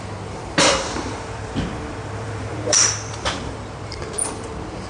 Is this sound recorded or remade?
remade